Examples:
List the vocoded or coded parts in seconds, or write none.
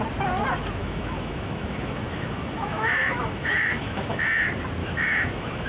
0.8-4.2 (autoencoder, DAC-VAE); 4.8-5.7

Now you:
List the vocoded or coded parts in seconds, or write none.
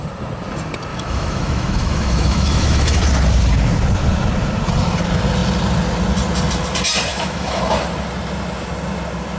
0.9-3.0 (autoencoder, DAC-VAE); 7.1-7.6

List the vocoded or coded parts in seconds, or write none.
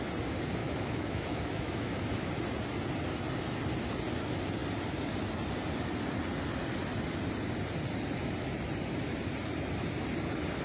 0.6-2.0 (autoencoder, DAC-VAE)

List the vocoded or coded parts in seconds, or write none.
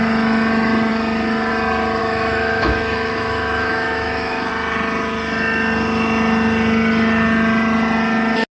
2.0-4.5 (autoencoder, DAC-VAE)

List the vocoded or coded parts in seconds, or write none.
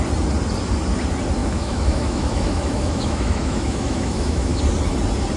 1.4-4.6 (autoencoder, DAC-VAE)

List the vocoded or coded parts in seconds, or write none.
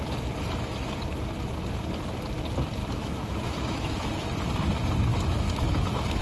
2.8-4.1 (autoencoder, DAC-VAE); 5.1-6.2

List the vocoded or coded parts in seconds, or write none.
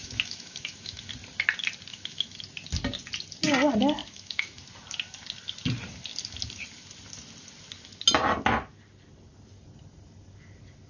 0.0-1.1 (autoencoder, DAC-VAE); 1.9-2.4; 4.0-4.6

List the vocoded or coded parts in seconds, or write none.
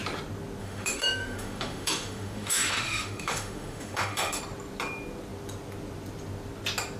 0.6-4.4 (autoencoder, DAC-VAE)